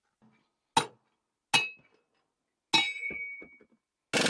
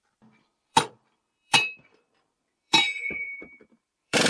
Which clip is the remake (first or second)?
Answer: second